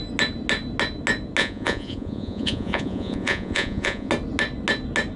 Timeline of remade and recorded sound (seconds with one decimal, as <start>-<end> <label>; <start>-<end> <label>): 0.0-1.4 recorded; 1.4-4.1 remade; 4.1-5.2 recorded